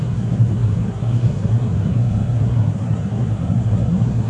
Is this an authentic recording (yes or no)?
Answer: no